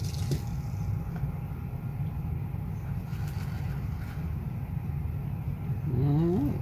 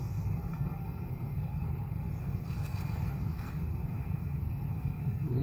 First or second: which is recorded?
first